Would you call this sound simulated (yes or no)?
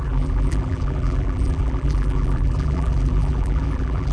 yes